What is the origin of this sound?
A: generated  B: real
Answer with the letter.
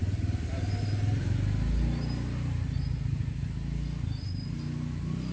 B